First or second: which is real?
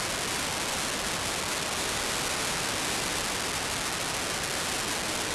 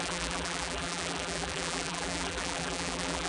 first